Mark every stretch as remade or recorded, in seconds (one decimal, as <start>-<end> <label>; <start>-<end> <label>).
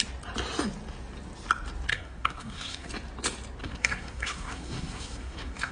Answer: 0.0-1.9 recorded; 1.9-2.9 remade; 2.9-3.6 recorded; 3.6-5.7 remade